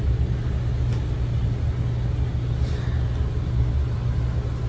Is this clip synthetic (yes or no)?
no